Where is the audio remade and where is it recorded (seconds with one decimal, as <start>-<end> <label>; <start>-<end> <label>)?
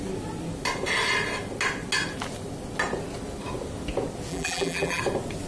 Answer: 0.0-4.3 recorded; 4.3-5.0 remade; 5.0-5.5 recorded